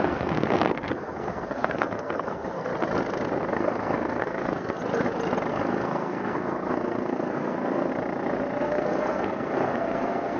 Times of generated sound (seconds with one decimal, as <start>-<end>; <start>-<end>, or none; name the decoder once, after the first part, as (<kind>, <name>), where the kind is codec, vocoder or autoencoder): 0.0-2.7 (codec, SNAC); 3.5-4.8; 5.5-7.9; 8.6-10.4